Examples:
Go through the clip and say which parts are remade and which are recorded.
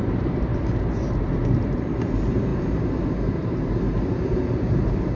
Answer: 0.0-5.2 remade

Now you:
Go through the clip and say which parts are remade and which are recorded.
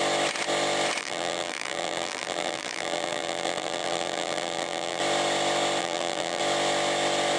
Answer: 0.0-1.0 recorded; 1.0-5.0 remade; 5.0-5.8 recorded; 5.8-6.4 remade; 6.4-7.4 recorded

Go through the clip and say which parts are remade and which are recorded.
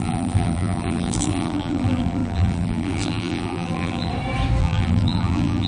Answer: 0.0-4.1 remade; 4.1-4.6 recorded; 4.6-5.7 remade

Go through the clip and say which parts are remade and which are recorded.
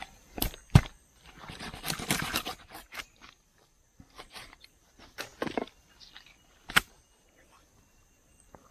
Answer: 0.0-2.3 remade; 2.3-3.0 recorded; 3.0-5.3 remade; 5.3-7.2 recorded; 7.2-8.7 remade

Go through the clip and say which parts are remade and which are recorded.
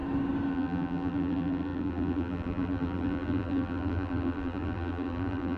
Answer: 0.0-0.5 recorded; 0.5-5.6 remade